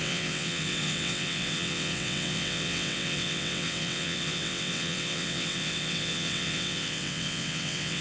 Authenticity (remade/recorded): remade